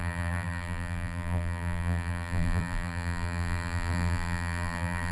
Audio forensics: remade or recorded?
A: remade